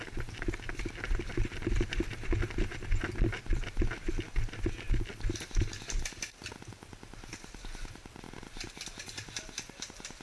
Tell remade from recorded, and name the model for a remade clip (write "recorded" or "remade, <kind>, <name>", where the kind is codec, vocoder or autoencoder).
recorded